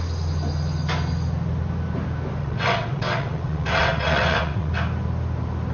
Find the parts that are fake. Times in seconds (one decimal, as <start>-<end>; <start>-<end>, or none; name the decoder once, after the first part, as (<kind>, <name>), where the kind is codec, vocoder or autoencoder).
2.4-4.7 (vocoder, WaveNeXt)